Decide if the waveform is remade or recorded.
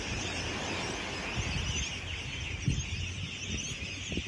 recorded